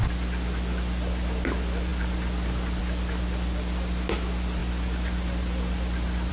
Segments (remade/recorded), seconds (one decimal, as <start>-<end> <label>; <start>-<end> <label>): 0.0-6.3 recorded